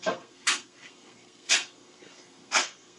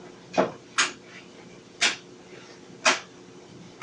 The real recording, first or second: second